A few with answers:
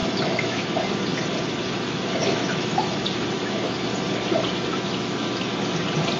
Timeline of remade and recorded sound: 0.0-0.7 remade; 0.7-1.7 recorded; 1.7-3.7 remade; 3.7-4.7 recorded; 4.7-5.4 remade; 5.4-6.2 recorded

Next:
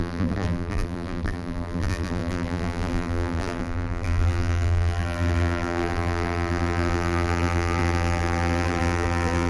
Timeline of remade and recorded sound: 0.0-9.5 remade

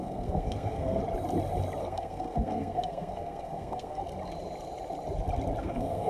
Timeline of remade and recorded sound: 0.0-1.0 remade; 1.0-1.8 recorded; 1.8-4.0 remade; 4.0-5.6 recorded; 5.6-6.1 remade

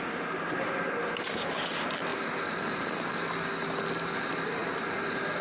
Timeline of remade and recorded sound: 0.0-5.4 recorded

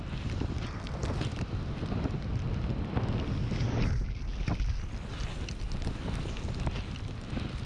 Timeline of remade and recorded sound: 0.0-7.7 recorded

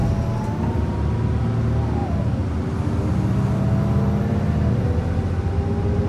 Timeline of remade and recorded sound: 0.0-6.1 recorded

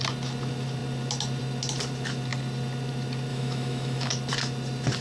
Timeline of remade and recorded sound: 0.0-3.3 recorded; 3.3-4.1 remade; 4.1-5.0 recorded

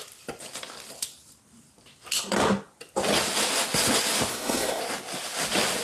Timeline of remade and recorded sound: 0.0-4.3 recorded; 4.3-4.8 remade; 4.8-5.8 recorded